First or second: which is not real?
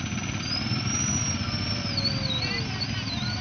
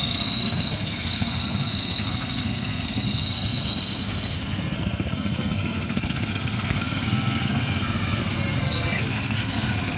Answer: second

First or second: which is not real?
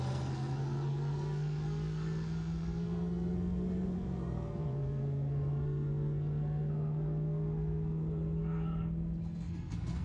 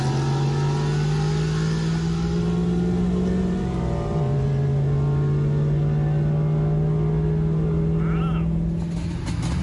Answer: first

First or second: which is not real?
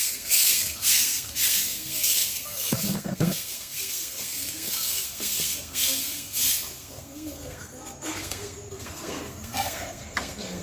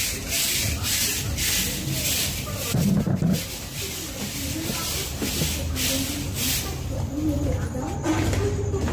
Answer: first